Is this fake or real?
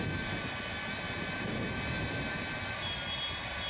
real